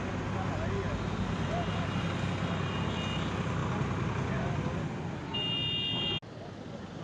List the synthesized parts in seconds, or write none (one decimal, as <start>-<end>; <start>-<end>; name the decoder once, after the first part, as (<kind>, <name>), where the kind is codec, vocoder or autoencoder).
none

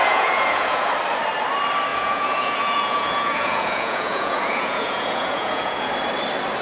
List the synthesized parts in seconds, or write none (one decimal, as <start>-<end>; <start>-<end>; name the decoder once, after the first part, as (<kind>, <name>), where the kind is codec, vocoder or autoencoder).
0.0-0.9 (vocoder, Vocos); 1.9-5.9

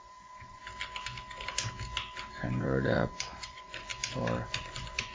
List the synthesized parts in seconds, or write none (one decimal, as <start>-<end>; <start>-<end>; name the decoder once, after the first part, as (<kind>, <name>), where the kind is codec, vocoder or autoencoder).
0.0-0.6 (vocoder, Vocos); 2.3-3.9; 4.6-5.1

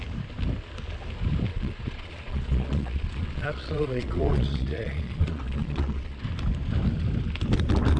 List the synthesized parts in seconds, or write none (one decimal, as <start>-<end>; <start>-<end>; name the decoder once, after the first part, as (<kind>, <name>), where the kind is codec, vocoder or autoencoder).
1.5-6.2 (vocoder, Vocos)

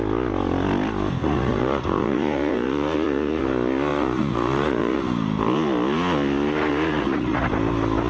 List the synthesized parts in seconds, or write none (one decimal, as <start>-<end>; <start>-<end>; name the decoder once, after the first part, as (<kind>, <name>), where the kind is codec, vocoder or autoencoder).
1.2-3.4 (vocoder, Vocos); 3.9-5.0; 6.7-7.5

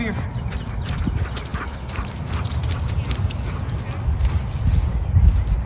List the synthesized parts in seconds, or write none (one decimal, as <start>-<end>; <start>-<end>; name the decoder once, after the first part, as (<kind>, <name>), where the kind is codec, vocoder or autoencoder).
none

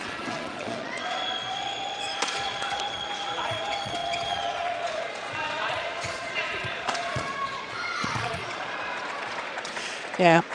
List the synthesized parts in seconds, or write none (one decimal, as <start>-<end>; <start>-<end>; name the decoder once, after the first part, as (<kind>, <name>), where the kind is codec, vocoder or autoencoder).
0.0-10.5 (vocoder, Vocos)